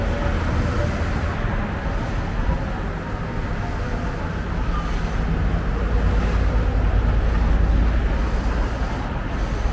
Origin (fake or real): real